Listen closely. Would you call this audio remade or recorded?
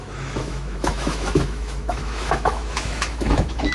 remade